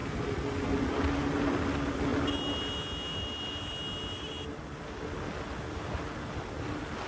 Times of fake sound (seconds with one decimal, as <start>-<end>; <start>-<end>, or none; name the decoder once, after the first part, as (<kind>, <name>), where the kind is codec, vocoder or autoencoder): none